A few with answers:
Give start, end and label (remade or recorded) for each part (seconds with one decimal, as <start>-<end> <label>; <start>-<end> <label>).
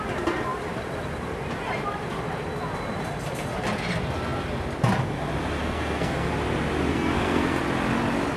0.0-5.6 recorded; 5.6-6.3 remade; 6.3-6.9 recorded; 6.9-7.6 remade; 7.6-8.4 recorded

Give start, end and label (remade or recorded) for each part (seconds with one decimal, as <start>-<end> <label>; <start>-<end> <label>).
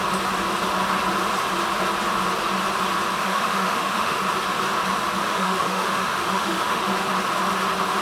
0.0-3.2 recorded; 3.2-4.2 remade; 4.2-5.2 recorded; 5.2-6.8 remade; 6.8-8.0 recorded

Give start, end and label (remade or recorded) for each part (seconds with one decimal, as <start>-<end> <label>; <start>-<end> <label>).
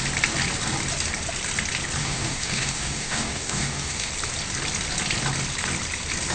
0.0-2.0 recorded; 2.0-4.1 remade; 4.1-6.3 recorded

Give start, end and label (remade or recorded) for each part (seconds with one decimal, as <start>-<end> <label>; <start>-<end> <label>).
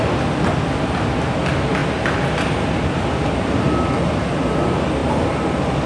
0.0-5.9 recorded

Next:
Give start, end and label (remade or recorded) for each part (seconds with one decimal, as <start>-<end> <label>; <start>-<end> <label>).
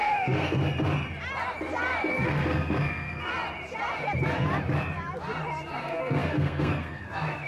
0.0-0.6 remade; 0.6-2.1 recorded; 2.1-3.3 remade; 3.3-5.8 recorded; 5.8-7.5 remade